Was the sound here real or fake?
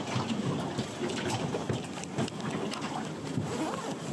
real